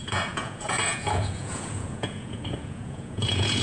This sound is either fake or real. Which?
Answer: fake